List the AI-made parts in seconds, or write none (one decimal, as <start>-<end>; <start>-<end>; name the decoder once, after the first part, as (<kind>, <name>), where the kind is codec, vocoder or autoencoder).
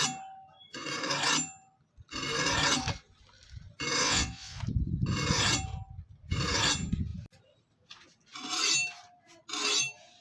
4.0-4.6 (vocoder, WaveNeXt)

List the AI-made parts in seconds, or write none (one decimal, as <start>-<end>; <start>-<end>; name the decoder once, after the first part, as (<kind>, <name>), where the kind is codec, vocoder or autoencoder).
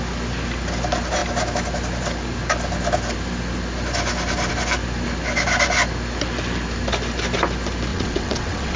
7.9-8.8 (vocoder, WaveNeXt)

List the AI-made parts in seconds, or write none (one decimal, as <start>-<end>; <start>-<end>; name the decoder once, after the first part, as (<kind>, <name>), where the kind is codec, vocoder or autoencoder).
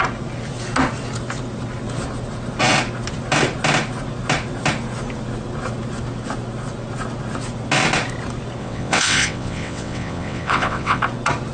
8.6-11.0 (vocoder, WaveNeXt)